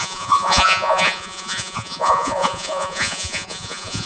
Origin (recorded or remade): remade